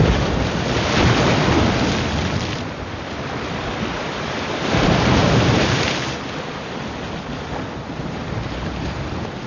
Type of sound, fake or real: fake